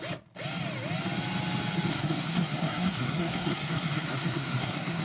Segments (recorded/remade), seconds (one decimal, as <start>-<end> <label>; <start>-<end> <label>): 0.0-1.9 recorded; 1.9-5.0 remade